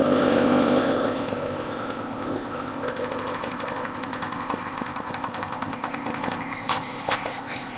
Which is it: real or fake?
fake